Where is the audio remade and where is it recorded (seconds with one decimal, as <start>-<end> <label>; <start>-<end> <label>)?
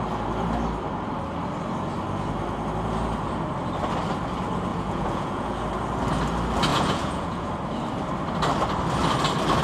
0.0-4.7 recorded; 4.7-5.6 remade; 5.6-6.7 recorded; 6.7-7.5 remade; 7.5-9.6 recorded